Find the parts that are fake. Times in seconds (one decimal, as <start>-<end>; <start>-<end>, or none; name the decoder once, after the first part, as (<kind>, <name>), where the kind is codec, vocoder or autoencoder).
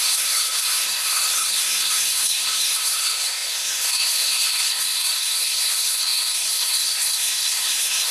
0.0-8.1 (codec, SNAC)